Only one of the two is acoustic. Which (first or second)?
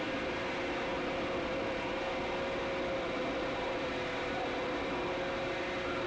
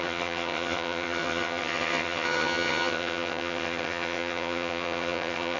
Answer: first